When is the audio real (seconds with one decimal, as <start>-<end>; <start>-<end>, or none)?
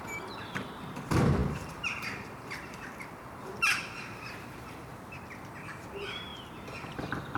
4.9-5.7